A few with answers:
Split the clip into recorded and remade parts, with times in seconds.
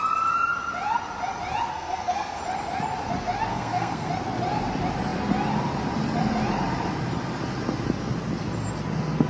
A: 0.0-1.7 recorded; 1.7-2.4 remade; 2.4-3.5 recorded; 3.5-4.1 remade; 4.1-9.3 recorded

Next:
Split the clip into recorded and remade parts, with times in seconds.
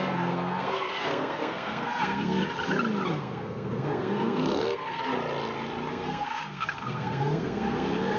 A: 0.0-2.4 remade; 2.4-3.1 recorded; 3.1-5.1 remade; 5.1-5.9 recorded; 5.9-8.2 remade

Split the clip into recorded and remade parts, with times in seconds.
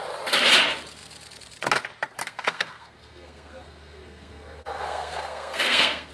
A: 0.0-2.2 recorded; 2.2-6.1 remade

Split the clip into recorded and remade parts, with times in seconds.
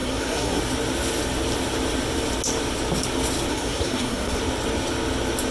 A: 0.0-0.6 remade; 0.6-3.5 recorded; 3.5-4.4 remade; 4.4-5.5 recorded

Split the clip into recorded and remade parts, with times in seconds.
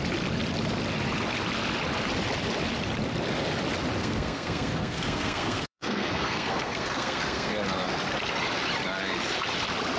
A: 0.0-4.0 recorded; 4.0-7.5 remade; 7.5-10.0 recorded